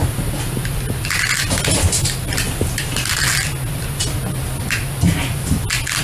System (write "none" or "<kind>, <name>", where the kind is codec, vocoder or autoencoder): none